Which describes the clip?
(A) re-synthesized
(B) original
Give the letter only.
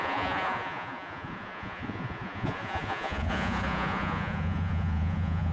A